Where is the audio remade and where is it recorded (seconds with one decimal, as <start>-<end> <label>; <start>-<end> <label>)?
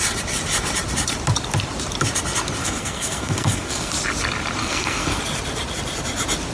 0.0-2.6 recorded; 2.6-3.9 remade; 3.9-4.6 recorded; 4.6-5.2 remade; 5.2-6.5 recorded